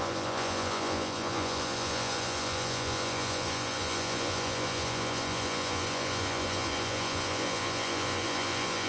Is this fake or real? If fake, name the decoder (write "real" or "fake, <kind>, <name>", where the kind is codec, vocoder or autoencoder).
fake, vocoder, Vocos